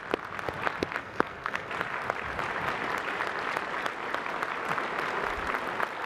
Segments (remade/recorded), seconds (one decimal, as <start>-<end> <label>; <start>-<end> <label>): 0.0-1.0 recorded; 1.0-1.7 remade; 1.7-6.1 recorded